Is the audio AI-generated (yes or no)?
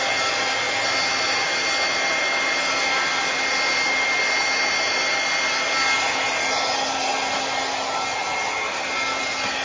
no